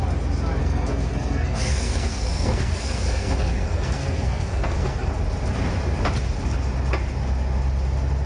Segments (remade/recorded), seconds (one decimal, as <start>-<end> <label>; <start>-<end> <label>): 0.0-0.6 recorded; 0.6-5.1 remade; 5.1-8.3 recorded